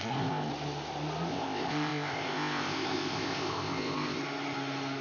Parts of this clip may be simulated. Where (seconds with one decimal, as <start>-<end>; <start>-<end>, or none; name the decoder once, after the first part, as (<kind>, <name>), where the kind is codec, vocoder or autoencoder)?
0.0-0.5 (codec, ZipCodec); 1.3-4.2